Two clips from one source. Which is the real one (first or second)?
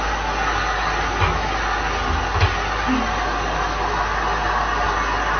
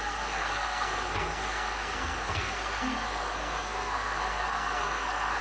first